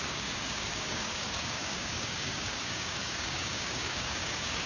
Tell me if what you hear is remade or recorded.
remade